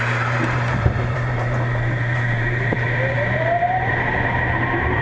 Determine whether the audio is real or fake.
fake